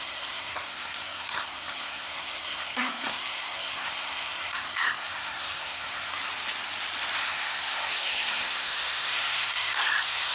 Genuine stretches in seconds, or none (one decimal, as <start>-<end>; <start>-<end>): 6.1-7.3